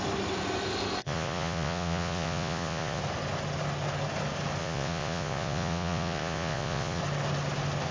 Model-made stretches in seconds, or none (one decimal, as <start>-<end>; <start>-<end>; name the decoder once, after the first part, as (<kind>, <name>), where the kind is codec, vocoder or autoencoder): 1.0-3.0 (vocoder, Vocos); 4.6-7.0